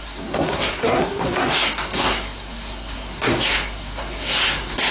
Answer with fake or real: fake